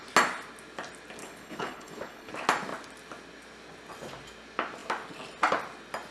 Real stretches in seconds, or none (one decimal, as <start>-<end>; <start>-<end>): 0.0-1.2; 2.3-6.1